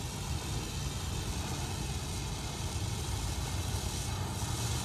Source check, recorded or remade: recorded